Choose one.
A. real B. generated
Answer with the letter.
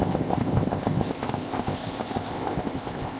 B